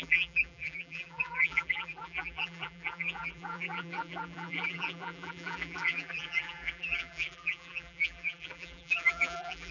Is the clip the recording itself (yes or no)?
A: no